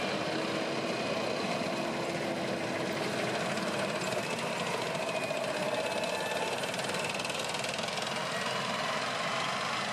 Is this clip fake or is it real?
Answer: real